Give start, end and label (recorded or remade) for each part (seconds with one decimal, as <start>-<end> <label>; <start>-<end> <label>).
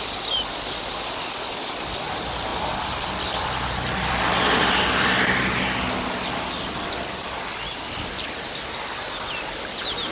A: 0.0-10.1 recorded